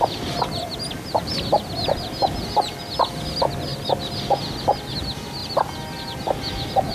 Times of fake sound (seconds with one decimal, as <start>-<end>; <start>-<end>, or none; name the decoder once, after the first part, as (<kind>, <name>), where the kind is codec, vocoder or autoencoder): none